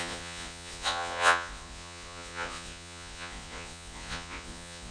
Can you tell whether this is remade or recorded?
remade